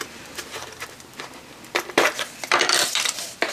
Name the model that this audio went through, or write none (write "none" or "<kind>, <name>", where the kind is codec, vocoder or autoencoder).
vocoder, BigVGAN v2